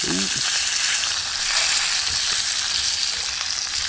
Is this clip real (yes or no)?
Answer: yes